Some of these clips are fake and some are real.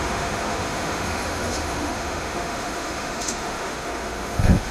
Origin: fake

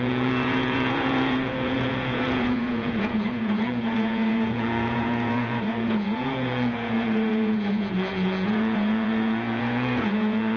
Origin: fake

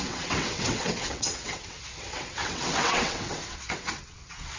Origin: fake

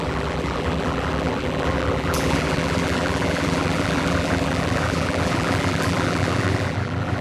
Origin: fake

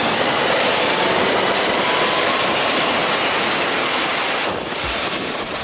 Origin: real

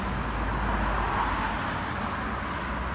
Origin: real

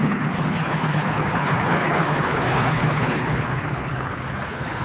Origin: fake